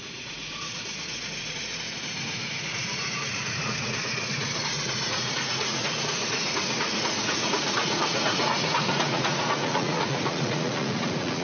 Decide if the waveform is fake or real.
fake